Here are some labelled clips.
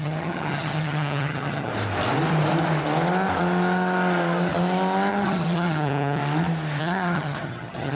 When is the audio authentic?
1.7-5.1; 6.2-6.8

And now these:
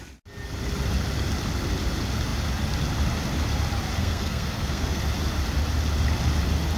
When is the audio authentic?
0.0-4.0; 5.0-6.8

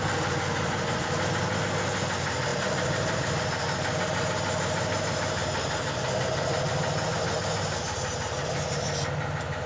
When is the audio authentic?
0.0-2.5; 3.4-9.7

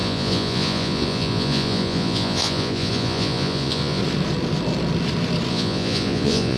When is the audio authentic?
4.0-5.5